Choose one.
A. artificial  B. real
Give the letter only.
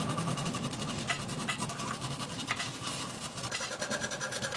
B